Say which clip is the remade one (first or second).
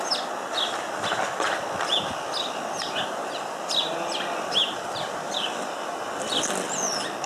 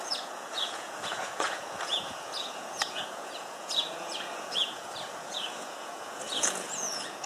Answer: second